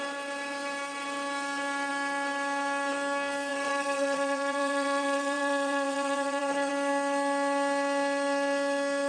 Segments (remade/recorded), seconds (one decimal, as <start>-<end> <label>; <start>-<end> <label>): 0.0-3.5 recorded; 3.5-6.7 remade; 6.7-9.1 recorded